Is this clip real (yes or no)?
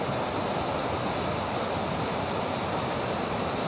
yes